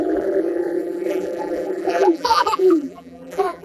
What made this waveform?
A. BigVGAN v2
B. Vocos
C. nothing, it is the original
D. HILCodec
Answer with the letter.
A